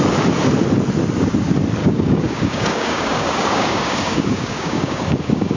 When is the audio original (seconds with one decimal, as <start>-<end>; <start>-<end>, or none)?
0.0-1.8